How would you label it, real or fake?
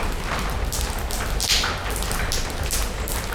real